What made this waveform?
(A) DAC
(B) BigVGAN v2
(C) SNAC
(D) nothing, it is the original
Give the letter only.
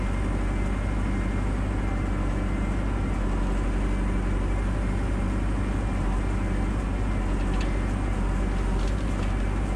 D